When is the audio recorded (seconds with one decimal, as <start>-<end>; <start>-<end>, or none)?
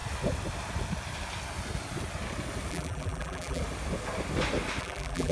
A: 0.0-2.7; 3.6-4.8